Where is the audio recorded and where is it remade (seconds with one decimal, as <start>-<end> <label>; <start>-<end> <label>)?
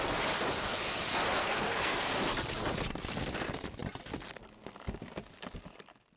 0.0-1.4 recorded; 1.4-2.1 remade; 2.1-6.2 recorded